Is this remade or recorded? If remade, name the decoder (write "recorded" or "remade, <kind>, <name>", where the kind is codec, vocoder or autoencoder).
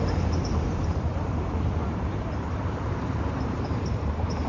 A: remade, vocoder, BigVGAN v2